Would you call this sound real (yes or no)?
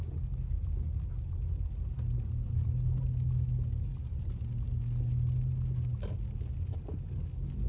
yes